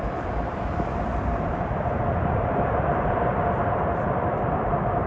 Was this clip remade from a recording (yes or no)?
yes